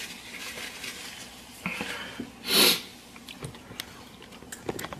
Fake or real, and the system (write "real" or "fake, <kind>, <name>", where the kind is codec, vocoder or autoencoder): real